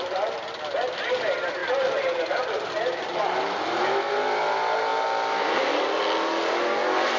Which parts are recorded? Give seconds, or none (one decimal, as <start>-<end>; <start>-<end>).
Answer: 0.0-7.2